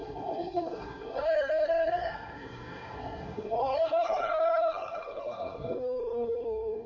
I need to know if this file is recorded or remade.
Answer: remade